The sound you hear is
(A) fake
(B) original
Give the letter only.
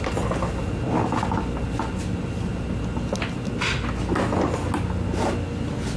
B